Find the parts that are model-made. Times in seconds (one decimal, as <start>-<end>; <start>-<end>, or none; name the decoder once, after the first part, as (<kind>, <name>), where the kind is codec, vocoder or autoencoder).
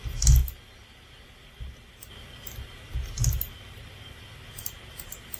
none